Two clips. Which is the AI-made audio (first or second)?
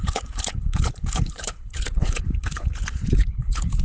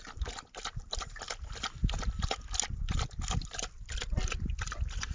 first